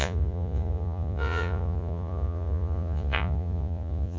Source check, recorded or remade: remade